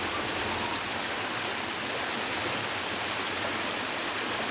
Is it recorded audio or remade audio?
recorded